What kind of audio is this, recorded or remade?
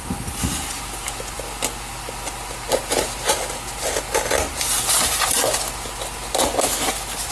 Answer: recorded